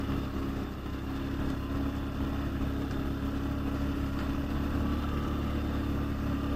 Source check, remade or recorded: recorded